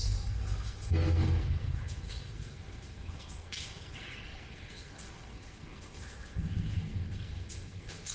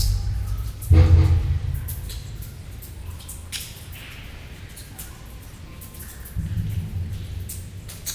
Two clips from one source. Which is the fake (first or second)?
first